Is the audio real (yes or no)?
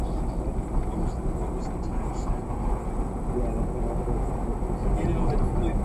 yes